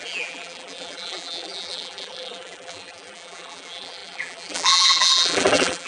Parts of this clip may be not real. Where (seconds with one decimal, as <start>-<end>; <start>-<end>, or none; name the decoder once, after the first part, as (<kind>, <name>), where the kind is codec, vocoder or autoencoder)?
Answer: 0.0-5.9 (vocoder, BigVGAN v2)

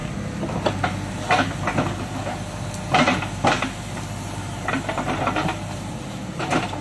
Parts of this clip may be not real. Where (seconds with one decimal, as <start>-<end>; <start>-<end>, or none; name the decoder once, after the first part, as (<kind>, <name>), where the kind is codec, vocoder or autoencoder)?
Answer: 4.1-6.8 (vocoder, BigVGAN v2)

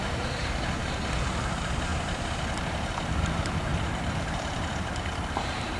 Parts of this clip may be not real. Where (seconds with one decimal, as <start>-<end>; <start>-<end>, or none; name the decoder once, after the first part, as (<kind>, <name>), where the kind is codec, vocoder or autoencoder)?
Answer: 0.0-0.4 (vocoder, BigVGAN v2); 1.3-1.9; 3.1-3.7; 4.2-5.8